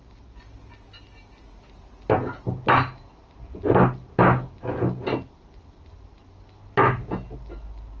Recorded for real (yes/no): yes